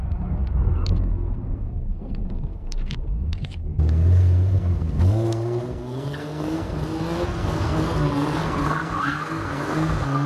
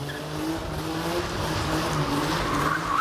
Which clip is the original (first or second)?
second